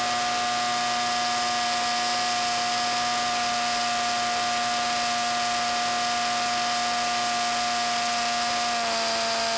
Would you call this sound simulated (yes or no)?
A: no